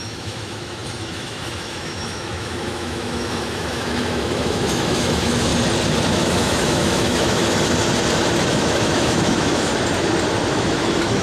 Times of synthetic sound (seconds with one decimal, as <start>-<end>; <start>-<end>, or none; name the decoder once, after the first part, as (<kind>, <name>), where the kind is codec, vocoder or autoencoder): 0.0-5.5 (autoencoder, DAC-VAE); 6.1-7.4; 8.5-9.7; 10.5-11.2

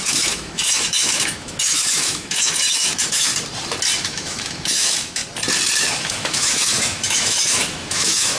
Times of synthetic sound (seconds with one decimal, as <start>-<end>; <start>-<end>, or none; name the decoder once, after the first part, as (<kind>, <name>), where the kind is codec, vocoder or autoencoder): 0.0-3.3 (autoencoder, DAC-VAE); 4.0-5.2; 5.8-8.4